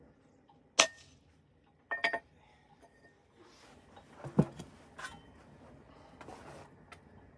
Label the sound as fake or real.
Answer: real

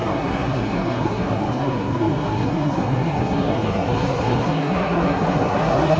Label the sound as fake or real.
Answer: fake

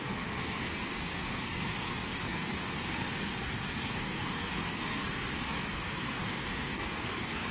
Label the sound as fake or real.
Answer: fake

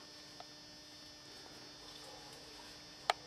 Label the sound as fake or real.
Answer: real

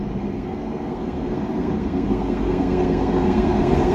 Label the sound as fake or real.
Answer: fake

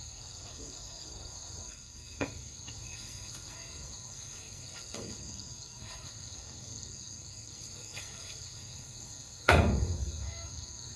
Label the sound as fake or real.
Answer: fake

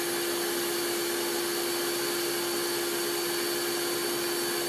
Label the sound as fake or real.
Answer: real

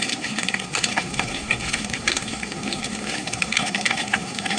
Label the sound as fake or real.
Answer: fake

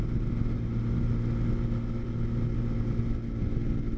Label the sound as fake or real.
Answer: real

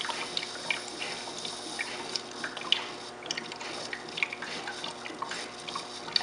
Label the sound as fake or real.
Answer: real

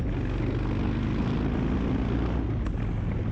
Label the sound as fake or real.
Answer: real